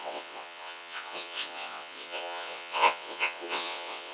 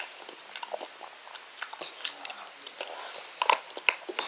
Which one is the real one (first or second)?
second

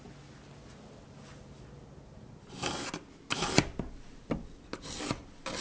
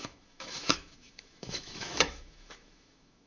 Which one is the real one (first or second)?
first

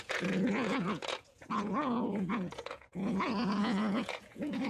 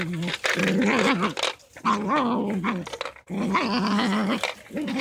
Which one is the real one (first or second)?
second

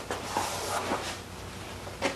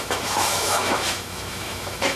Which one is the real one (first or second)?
first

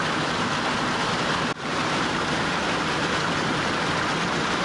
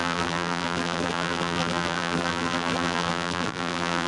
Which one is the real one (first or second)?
first